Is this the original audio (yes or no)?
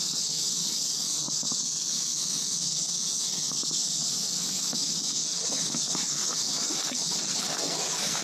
no